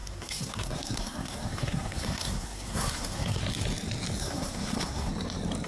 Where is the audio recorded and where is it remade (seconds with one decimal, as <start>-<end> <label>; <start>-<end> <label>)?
0.0-3.4 remade; 3.4-4.2 recorded; 4.2-5.1 remade; 5.1-5.7 recorded